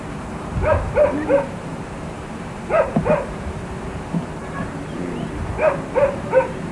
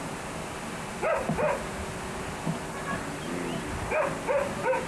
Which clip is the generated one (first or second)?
first